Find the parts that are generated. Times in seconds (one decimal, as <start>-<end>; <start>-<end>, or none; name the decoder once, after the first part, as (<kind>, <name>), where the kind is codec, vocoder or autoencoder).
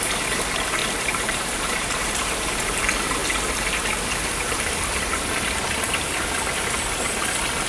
0.8-2.8 (vocoder, BigVGAN v2)